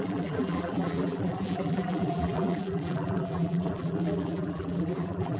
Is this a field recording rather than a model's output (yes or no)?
no